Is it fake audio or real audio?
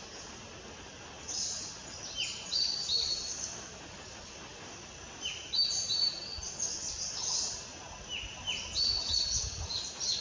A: real